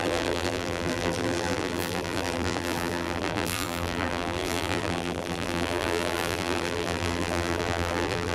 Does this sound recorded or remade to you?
remade